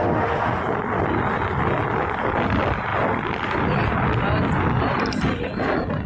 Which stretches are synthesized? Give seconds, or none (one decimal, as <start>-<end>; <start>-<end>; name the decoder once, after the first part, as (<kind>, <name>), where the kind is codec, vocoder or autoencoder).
0.0-0.6 (autoencoder, DAC-VAE)